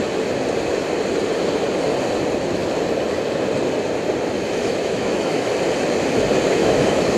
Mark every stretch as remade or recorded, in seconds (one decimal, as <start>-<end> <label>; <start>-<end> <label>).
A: 0.0-4.6 recorded; 4.6-5.5 remade; 5.5-6.6 recorded; 6.6-7.2 remade